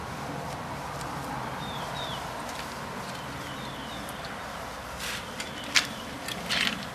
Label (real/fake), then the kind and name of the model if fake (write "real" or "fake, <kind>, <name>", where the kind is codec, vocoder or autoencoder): real